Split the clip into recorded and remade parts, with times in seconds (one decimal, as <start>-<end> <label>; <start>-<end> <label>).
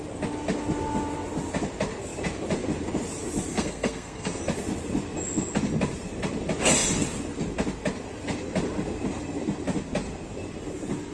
0.0-3.5 recorded; 3.5-4.4 remade; 4.4-11.1 recorded